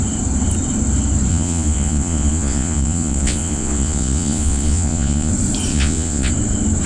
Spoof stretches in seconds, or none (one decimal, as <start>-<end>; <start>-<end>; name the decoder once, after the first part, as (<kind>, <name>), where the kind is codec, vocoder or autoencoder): 1.3-5.3 (vocoder, Vocos); 5.7-6.3